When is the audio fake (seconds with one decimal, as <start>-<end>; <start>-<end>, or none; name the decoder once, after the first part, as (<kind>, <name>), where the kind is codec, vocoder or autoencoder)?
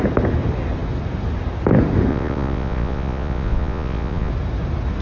2.1-4.3 (vocoder, Vocos)